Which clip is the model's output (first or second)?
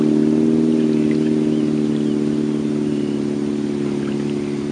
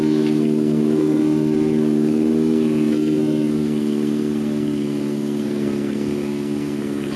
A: second